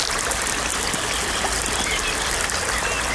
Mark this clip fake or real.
real